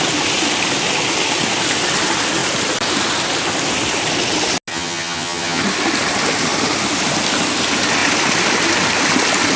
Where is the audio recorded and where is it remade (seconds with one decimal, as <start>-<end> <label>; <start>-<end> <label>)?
0.0-4.7 recorded; 4.7-5.6 remade; 5.6-9.6 recorded